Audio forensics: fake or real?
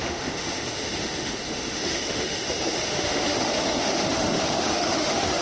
fake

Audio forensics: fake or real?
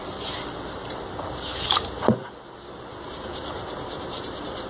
real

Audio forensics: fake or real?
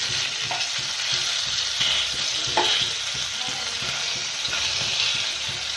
real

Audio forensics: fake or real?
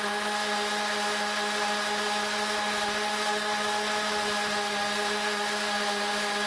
real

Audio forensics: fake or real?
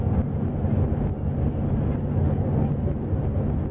real